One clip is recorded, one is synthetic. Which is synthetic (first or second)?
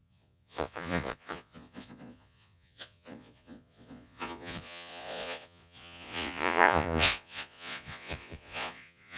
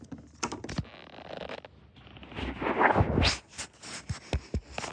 first